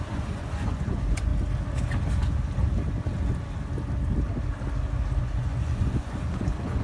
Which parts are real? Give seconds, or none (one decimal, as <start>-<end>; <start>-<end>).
1.3-5.2